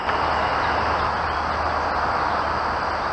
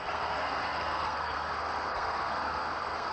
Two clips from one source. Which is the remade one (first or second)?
second